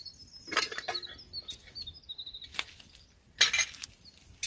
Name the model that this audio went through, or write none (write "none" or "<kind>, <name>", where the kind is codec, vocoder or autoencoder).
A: none